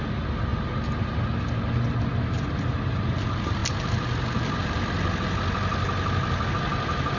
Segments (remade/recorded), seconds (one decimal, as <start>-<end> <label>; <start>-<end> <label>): 0.0-7.2 recorded